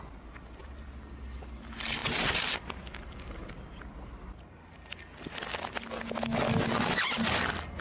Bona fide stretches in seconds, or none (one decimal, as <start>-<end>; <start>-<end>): 0.0-7.8